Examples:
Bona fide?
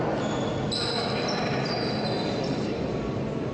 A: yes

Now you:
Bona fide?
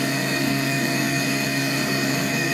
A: no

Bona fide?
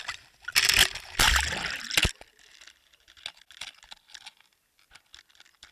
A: yes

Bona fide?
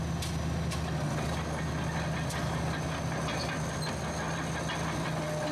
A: yes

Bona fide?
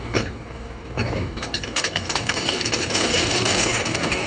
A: no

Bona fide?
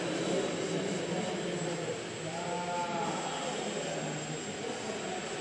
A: yes